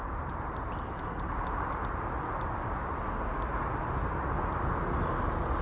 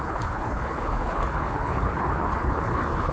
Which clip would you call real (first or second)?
first